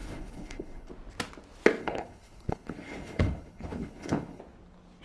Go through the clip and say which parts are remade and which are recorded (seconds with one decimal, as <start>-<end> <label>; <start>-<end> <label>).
0.0-0.9 remade; 0.9-1.8 recorded; 1.8-4.4 remade; 4.4-5.0 recorded